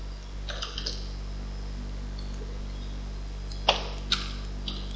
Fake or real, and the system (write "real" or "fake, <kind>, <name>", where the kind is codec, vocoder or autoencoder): real